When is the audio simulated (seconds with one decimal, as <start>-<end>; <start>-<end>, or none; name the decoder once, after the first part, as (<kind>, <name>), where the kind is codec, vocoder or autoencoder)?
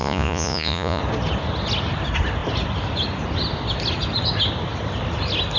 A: 0.0-1.0 (vocoder, Vocos)